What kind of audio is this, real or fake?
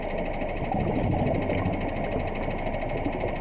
real